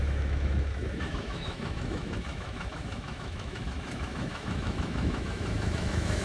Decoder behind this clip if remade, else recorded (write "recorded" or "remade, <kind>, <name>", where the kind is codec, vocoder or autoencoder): remade, autoencoder, DAC-VAE